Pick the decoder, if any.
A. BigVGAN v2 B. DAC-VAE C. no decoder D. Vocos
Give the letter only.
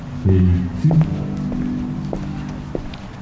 C